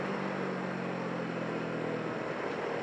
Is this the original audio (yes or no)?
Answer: yes